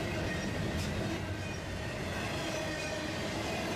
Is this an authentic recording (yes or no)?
yes